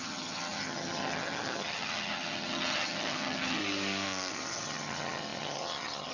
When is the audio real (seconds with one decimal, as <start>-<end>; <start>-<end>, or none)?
3.6-4.3